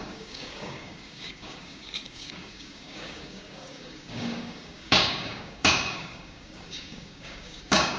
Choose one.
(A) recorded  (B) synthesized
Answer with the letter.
B